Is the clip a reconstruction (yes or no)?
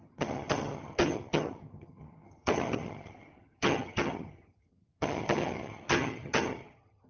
yes